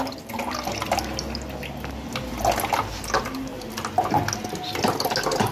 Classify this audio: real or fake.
real